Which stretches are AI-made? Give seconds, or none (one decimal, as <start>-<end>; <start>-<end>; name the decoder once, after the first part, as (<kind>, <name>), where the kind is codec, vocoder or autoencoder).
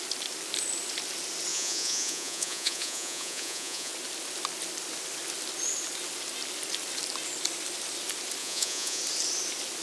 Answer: 1.5-3.9 (vocoder, Vocos); 8.4-9.0